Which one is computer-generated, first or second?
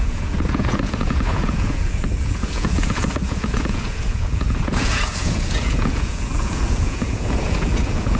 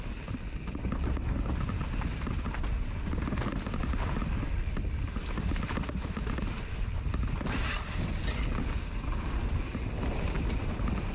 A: first